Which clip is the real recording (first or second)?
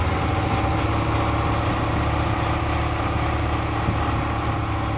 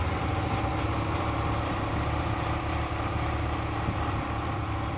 first